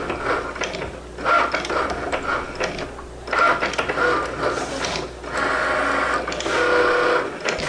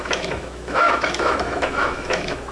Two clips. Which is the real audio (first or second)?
first